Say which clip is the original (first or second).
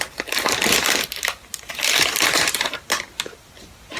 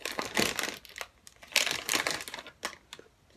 second